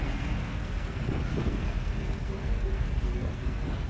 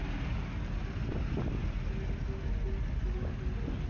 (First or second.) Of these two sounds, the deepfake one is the first